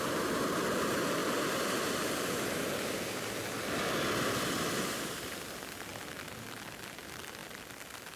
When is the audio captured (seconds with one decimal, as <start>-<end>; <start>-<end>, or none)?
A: 0.0-5.9; 6.6-8.2